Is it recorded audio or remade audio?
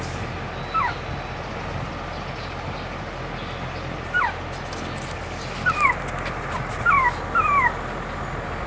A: recorded